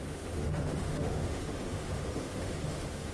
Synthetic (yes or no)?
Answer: yes